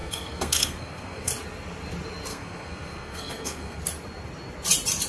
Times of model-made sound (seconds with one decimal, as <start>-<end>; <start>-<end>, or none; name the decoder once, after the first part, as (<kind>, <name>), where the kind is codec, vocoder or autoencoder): 0.0-1.3 (codec, SNAC); 2.3-3.8